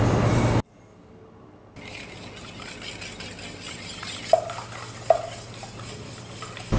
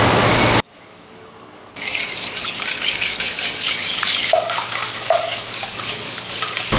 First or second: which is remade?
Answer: second